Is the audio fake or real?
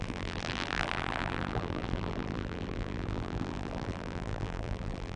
fake